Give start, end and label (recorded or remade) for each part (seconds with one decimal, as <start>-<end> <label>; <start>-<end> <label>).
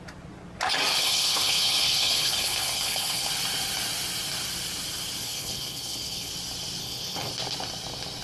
0.0-1.0 recorded; 1.0-3.3 remade; 3.3-5.2 recorded; 5.2-6.3 remade; 6.3-6.8 recorded; 6.8-7.3 remade; 7.3-8.2 recorded